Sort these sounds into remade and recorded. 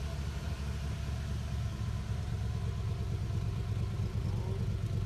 recorded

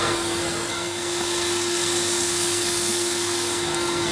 remade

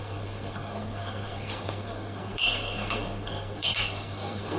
remade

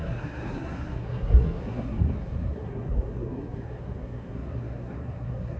remade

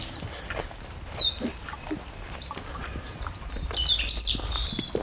recorded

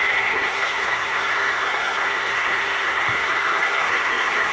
remade